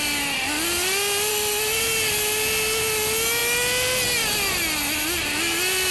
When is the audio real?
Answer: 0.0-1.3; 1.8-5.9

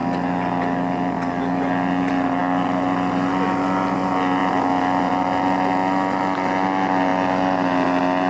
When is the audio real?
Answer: 0.0-8.3